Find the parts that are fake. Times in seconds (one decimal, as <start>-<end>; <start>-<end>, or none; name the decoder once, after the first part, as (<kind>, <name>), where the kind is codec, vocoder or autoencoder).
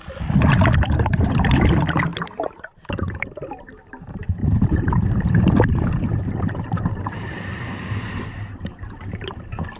4.4-9.4 (vocoder, BigVGAN v2)